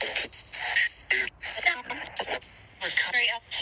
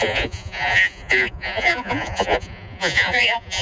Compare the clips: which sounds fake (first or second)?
second